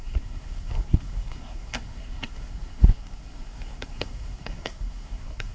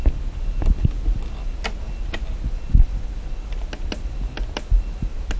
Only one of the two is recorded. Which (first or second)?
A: second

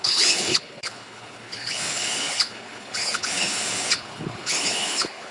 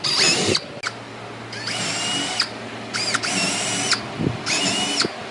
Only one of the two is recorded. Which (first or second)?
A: second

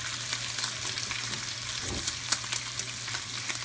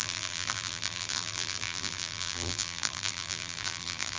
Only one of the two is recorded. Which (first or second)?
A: first